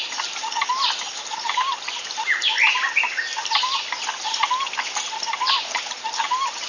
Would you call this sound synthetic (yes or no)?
no